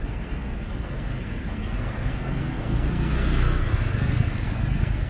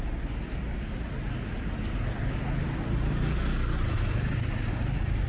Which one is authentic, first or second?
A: second